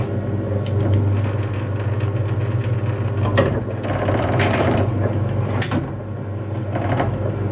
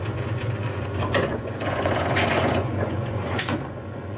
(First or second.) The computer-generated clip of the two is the second